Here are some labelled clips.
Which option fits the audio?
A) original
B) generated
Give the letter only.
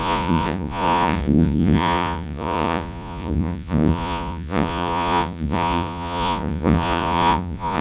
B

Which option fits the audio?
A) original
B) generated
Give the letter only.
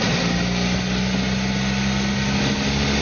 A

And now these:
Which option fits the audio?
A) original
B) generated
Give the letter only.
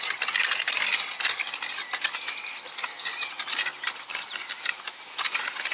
A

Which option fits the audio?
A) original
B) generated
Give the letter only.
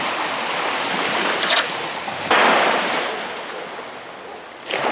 A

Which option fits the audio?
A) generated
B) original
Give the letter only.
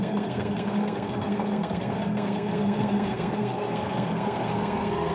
A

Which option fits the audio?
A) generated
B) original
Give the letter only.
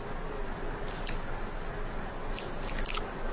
B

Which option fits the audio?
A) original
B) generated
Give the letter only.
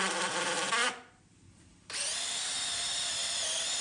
A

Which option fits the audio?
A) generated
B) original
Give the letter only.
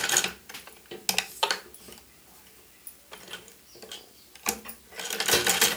B